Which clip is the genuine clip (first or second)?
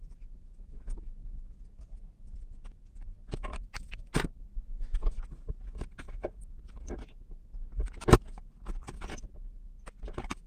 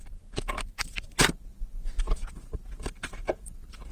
first